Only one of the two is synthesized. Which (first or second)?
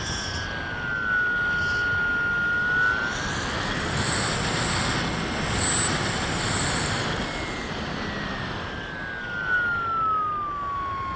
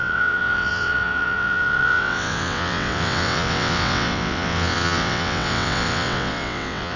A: second